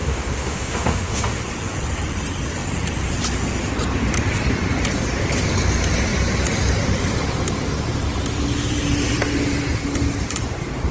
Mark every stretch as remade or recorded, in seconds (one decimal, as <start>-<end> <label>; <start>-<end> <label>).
0.0-1.4 remade; 1.4-10.9 recorded